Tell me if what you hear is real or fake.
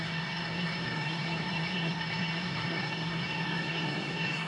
fake